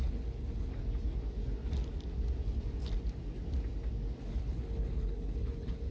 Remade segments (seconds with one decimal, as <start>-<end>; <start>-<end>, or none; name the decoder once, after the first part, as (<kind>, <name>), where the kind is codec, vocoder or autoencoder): 0.0-0.7 (codec, HILCodec); 4.2-5.9